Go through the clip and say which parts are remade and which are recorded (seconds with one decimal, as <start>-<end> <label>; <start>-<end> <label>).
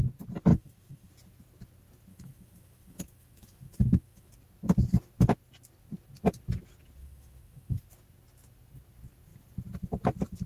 0.0-0.5 recorded; 0.5-1.1 remade; 1.1-2.1 recorded; 2.1-4.3 remade; 4.3-7.0 recorded; 7.0-7.8 remade; 7.8-10.5 recorded